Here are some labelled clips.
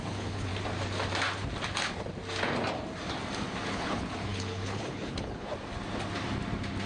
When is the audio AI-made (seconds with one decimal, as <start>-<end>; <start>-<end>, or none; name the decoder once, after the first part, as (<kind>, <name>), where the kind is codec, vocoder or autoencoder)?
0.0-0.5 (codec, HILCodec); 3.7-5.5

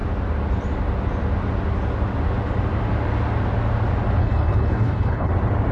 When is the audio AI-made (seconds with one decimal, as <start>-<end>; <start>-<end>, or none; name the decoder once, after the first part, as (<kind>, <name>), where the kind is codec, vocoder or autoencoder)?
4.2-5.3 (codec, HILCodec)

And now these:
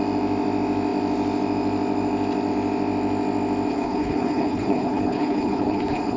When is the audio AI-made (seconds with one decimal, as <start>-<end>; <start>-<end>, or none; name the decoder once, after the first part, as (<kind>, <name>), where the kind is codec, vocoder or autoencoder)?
3.7-6.2 (codec, HILCodec)